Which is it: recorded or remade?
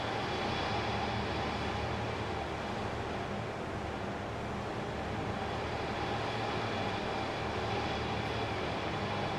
recorded